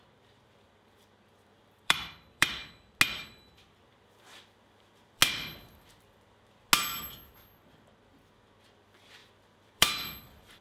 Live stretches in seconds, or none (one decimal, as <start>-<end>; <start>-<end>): 2.6-3.6; 5.2-8.1